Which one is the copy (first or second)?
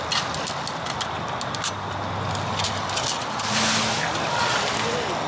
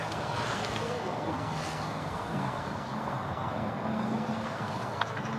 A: second